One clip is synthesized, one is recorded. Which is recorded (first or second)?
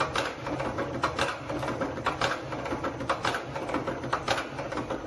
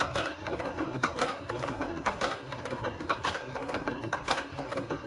first